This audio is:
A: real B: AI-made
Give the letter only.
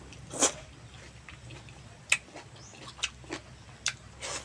A